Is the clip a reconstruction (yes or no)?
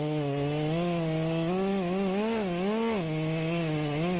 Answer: no